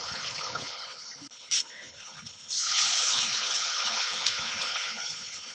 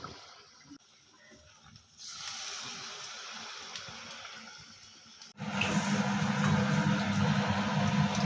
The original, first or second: second